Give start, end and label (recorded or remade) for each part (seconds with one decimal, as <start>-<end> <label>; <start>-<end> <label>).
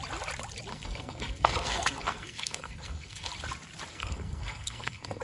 0.0-0.7 recorded; 0.7-3.3 remade; 3.3-3.9 recorded; 3.9-5.2 remade